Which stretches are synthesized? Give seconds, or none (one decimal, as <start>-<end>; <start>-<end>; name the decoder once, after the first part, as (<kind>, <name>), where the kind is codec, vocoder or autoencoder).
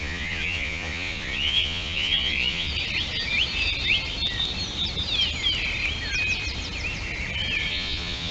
0.0-2.7 (vocoder, Vocos); 7.7-8.3